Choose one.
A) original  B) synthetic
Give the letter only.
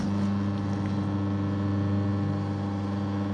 A